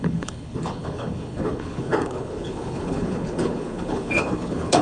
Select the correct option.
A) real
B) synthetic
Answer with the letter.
B